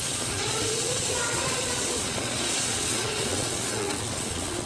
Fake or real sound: fake